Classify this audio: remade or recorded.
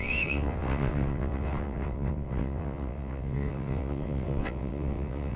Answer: remade